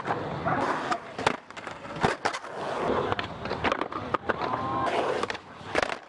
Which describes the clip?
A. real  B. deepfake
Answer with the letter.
A